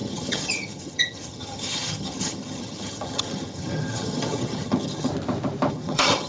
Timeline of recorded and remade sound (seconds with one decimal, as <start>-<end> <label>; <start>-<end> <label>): 0.0-5.1 remade; 5.1-5.7 recorded; 5.7-6.3 remade